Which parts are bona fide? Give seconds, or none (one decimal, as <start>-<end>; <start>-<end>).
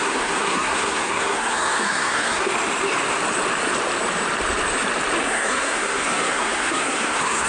2.5-5.2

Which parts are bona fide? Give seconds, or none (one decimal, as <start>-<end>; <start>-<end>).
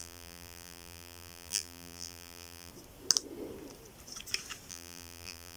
2.7-4.7